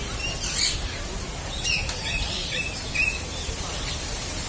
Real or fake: real